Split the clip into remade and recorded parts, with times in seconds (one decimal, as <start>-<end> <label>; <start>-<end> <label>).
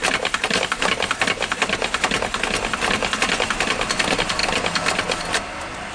0.0-5.9 recorded